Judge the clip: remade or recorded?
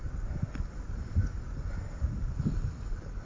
recorded